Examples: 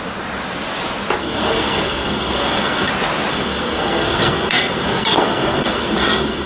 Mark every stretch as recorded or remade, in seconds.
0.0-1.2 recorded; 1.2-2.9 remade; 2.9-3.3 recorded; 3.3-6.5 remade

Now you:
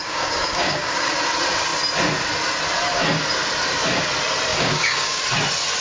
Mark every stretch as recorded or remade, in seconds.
0.0-1.1 remade; 1.1-4.5 recorded; 4.5-5.2 remade; 5.2-5.8 recorded